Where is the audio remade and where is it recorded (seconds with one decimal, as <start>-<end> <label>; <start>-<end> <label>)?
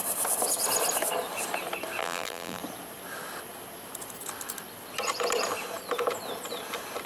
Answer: 0.0-2.0 recorded; 2.0-2.6 remade; 2.6-7.1 recorded